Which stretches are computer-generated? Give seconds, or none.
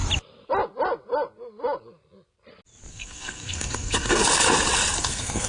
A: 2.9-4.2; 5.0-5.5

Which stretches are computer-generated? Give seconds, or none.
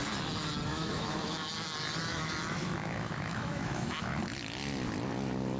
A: 0.7-1.5; 2.1-4.2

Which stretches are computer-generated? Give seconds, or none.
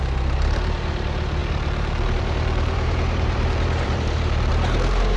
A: 0.0-5.2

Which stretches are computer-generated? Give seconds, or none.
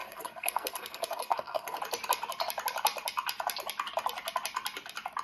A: 0.0-1.8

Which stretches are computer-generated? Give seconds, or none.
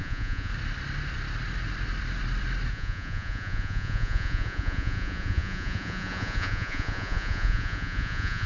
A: 0.0-0.5; 2.7-8.5